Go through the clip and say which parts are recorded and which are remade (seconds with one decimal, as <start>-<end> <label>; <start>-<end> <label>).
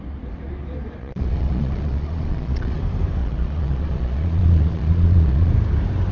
0.0-1.0 recorded; 1.0-2.8 remade; 2.8-3.2 recorded; 3.2-5.5 remade; 5.5-6.1 recorded